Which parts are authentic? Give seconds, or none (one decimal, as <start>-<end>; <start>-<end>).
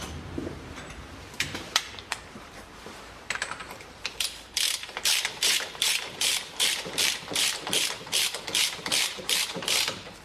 none